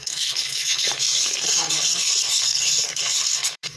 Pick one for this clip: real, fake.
fake